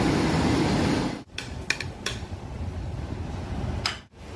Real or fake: real